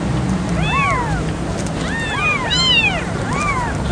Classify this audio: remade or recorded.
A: recorded